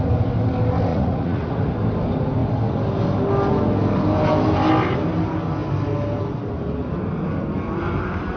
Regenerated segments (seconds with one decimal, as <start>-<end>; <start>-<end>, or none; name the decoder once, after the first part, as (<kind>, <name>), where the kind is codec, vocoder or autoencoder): 0.9-1.7 (vocoder, Vocos)

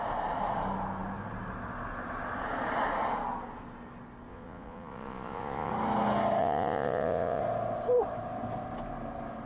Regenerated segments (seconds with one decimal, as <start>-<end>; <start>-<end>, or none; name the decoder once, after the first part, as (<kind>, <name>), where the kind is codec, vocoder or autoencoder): 4.3-5.7 (vocoder, Vocos); 6.4-7.4

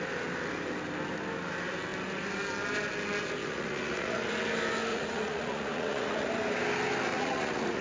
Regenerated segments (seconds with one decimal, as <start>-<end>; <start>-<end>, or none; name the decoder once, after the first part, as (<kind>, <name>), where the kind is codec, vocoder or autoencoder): 3.4-4.2 (vocoder, Vocos); 4.9-6.3; 7.1-7.8

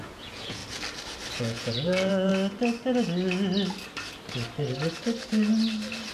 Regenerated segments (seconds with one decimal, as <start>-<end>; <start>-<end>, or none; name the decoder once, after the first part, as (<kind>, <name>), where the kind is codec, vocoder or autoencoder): 0.0-0.6 (vocoder, Vocos); 1.4-2.3

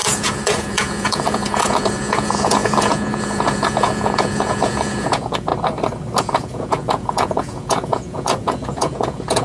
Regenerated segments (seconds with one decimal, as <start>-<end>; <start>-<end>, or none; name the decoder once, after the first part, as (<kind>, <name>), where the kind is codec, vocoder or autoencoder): 0.0-5.5 (vocoder, Vocos); 6.2-9.4

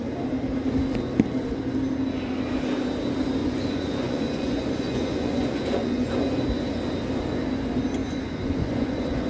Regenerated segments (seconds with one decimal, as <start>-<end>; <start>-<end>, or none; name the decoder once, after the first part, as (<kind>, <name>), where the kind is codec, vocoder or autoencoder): 3.4-6.3 (vocoder, Vocos); 8.0-9.3

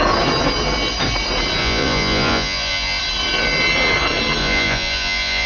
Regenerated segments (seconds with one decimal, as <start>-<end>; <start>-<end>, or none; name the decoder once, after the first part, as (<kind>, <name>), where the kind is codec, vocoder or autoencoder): 1.6-3.0 (vocoder, Vocos); 4.4-5.5